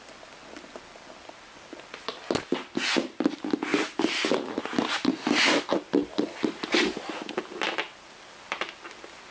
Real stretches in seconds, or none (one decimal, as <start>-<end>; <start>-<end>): 0.0-3.7; 4.6-9.3